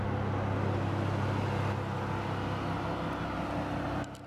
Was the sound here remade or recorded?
recorded